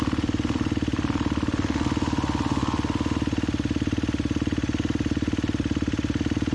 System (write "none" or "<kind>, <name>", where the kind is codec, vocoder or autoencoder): none